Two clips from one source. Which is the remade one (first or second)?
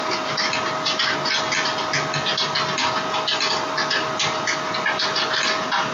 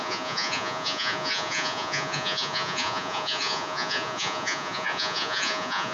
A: second